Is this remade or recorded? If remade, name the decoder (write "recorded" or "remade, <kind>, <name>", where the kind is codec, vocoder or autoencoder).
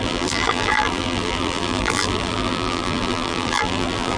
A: remade, vocoder, BigVGAN v2